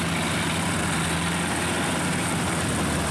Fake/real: real